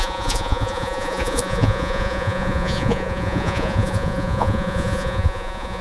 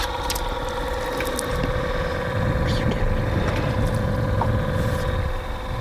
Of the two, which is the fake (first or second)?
first